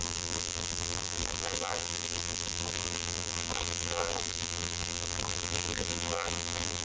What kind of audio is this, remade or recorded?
remade